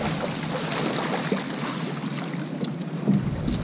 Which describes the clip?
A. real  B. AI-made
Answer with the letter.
A